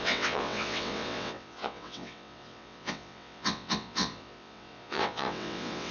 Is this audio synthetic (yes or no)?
yes